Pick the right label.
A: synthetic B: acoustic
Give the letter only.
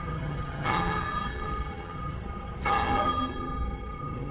A